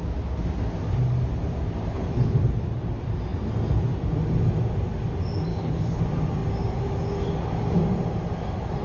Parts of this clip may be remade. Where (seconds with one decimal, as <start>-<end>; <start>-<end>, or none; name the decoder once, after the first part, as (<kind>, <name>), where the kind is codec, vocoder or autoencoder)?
1.9-2.4 (codec, HILCodec); 5.5-6.0